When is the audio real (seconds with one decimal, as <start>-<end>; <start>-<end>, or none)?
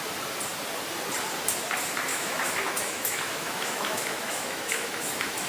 0.0-2.1